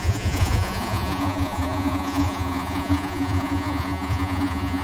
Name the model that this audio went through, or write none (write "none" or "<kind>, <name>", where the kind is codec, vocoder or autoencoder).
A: vocoder, Vocos